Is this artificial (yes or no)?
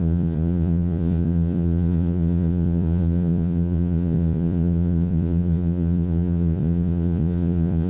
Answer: yes